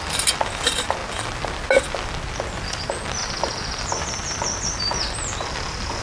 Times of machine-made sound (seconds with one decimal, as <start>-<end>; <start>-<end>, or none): none